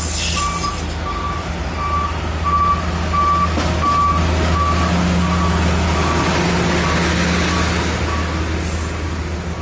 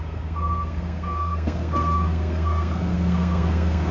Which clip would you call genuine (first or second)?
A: first